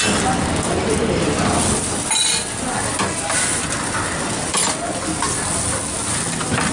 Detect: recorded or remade recorded